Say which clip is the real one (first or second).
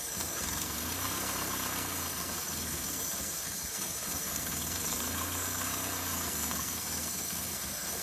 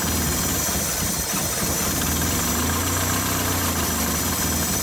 second